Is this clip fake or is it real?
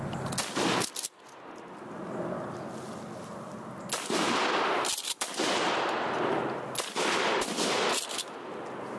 real